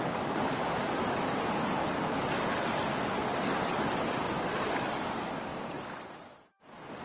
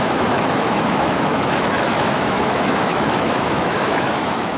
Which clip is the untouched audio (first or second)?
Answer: first